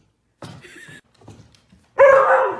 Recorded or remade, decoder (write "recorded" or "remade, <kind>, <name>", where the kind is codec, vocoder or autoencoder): recorded